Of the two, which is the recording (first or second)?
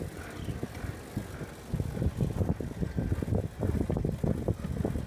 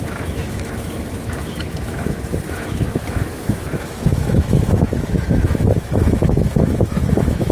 first